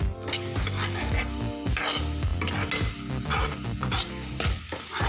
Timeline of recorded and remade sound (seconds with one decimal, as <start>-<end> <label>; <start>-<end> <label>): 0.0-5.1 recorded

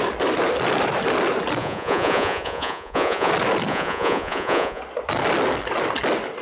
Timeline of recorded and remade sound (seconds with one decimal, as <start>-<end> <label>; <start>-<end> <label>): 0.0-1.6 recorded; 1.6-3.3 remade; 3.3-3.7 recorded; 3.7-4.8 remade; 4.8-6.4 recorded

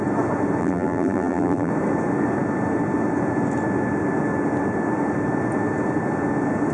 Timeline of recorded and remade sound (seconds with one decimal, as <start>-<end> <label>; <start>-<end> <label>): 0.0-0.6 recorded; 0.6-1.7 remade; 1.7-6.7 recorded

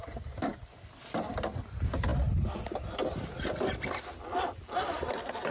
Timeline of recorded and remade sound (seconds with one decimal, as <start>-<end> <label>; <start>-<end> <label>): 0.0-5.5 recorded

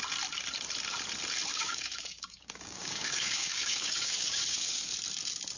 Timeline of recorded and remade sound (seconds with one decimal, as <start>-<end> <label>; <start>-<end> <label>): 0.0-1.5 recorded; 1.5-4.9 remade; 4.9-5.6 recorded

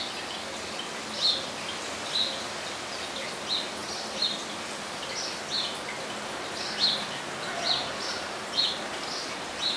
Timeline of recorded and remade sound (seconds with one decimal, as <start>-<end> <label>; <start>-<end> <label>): 0.0-9.8 recorded

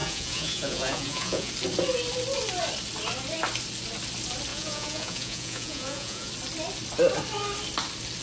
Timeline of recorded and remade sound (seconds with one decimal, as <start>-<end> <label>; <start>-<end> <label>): 0.0-1.5 remade; 1.5-4.5 recorded; 4.5-6.3 remade; 6.3-8.2 recorded

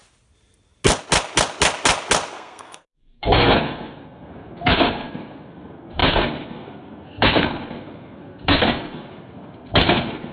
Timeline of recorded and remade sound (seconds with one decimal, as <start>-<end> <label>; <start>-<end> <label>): 0.0-2.3 recorded; 2.3-10.3 remade